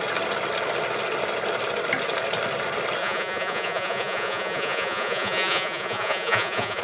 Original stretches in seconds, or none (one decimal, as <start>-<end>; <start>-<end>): 0.0-3.0